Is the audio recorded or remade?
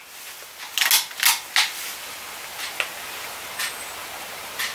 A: recorded